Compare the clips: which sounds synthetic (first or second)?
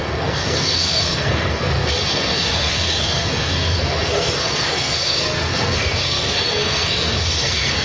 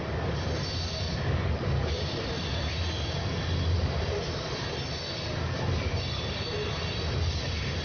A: first